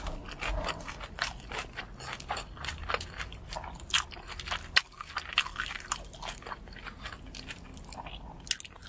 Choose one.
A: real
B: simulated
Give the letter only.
A